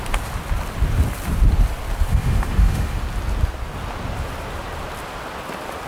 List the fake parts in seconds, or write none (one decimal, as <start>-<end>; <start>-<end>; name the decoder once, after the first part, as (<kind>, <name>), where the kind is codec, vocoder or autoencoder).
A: 2.1-3.0 (autoencoder, DAC-VAE)